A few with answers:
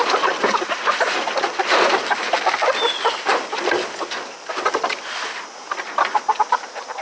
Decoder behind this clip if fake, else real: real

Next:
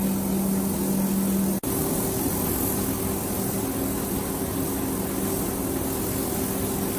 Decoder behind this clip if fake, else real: real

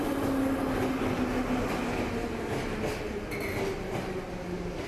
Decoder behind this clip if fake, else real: real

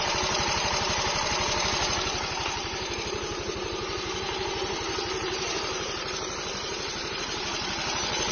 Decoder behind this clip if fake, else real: fake, vocoder, BigVGAN v2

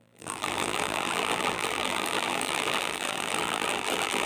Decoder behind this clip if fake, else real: fake, vocoder, BigVGAN v2